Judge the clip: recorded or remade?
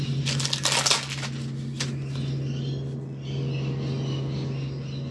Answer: recorded